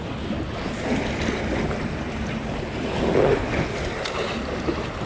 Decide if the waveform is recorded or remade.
recorded